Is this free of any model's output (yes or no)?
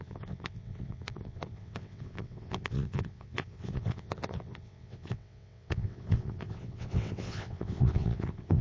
no